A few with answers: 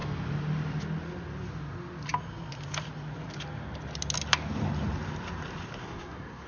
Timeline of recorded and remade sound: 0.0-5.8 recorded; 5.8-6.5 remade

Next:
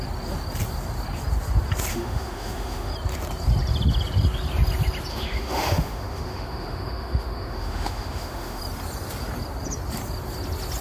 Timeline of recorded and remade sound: 0.0-1.9 recorded; 1.9-2.9 remade; 2.9-5.1 recorded; 5.1-8.6 remade; 8.6-10.8 recorded